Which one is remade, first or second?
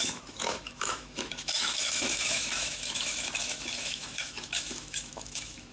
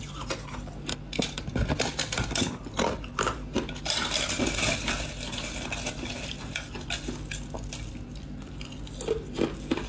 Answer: first